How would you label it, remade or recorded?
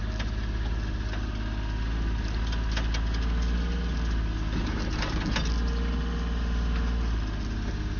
recorded